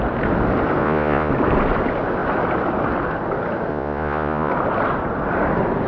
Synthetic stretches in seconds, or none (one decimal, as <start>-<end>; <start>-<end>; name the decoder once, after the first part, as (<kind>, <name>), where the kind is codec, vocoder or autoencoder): 0.8-1.3 (vocoder, Vocos); 3.7-4.5